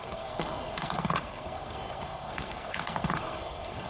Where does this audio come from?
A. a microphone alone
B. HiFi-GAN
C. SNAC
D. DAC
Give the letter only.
C